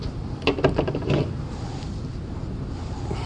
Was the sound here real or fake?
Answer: real